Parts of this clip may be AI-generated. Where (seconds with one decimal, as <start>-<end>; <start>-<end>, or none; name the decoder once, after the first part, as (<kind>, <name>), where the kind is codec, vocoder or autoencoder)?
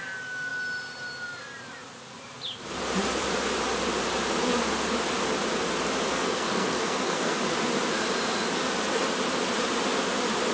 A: 6.1-7.4 (codec, SNAC)